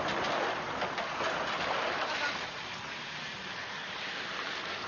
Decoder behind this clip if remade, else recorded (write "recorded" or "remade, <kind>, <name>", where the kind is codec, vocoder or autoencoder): recorded